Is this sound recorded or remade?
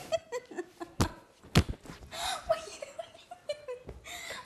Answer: recorded